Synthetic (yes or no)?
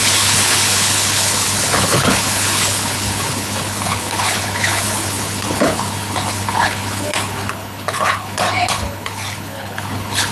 yes